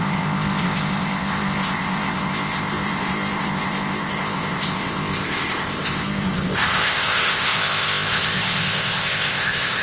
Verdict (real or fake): fake